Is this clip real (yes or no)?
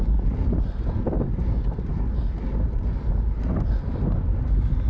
yes